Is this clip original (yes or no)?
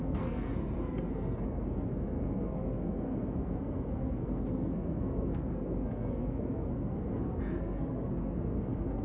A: no